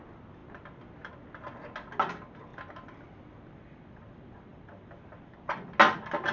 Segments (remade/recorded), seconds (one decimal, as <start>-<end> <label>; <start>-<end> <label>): 0.0-6.3 recorded